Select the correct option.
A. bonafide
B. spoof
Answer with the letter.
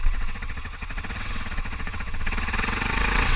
B